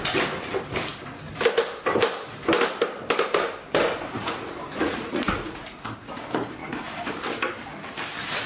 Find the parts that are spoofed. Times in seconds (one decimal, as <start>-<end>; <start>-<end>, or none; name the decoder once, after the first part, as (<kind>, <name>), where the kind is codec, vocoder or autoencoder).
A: 4.2-6.1 (vocoder, Vocos)